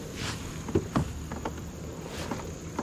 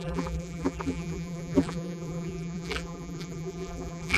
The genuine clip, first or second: first